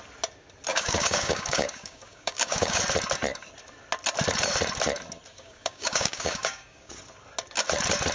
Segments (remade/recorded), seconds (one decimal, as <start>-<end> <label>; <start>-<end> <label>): 0.0-0.7 recorded; 0.7-2.8 remade; 2.8-5.3 recorded; 5.3-7.0 remade; 7.0-8.1 recorded